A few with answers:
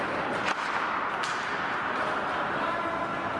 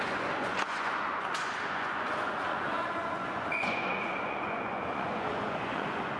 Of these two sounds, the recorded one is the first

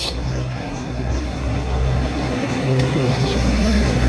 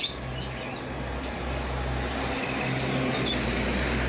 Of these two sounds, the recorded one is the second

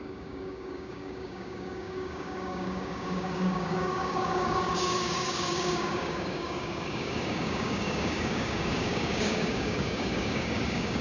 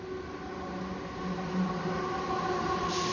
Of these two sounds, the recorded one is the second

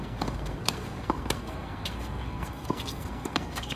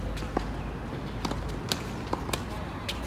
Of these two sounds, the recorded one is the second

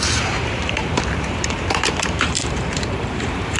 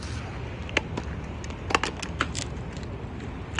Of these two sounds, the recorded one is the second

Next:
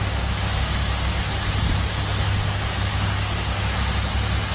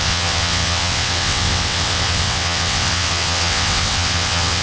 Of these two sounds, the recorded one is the first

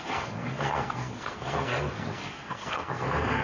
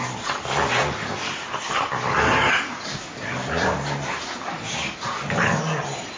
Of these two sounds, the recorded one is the second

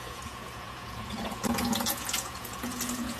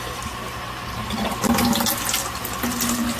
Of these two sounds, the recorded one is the second